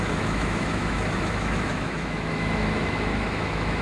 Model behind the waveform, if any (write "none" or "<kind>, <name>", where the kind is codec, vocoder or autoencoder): autoencoder, DAC-VAE